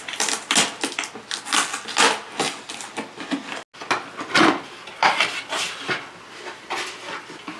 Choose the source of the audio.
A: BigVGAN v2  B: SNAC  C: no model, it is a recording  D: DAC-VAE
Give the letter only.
C